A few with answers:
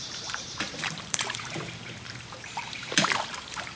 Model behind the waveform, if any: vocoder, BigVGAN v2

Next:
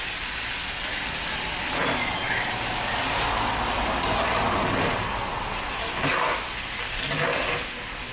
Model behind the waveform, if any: none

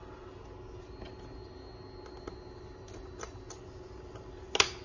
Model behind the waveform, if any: none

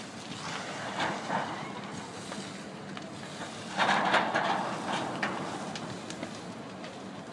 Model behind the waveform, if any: none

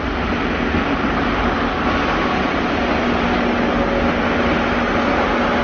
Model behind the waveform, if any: none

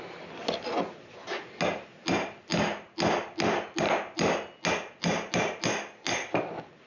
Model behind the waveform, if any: none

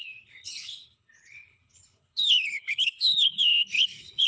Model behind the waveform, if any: codec, HILCodec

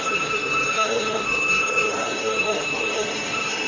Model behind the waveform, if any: codec, SNAC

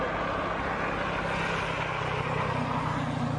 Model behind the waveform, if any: none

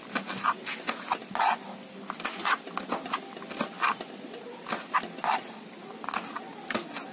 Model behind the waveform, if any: none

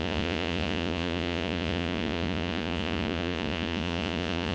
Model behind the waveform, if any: vocoder, Vocos